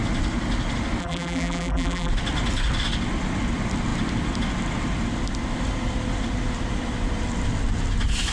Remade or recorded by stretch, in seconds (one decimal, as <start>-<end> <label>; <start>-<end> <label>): 0.0-1.0 recorded; 1.0-2.1 remade; 2.1-8.3 recorded